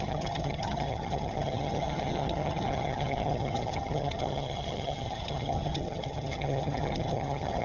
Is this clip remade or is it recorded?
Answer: remade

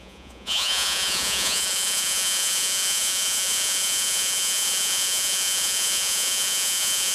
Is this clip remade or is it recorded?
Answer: remade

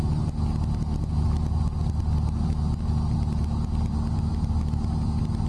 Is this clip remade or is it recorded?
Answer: recorded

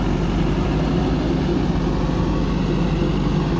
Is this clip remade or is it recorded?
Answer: recorded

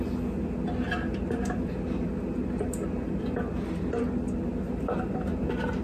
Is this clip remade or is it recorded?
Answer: recorded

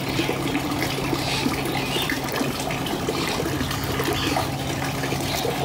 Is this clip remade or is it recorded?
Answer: recorded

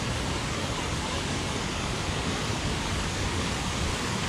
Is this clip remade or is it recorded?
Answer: remade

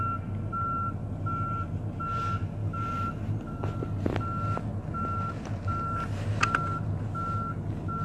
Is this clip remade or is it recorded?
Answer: recorded